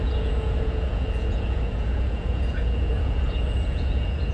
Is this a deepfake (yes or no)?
yes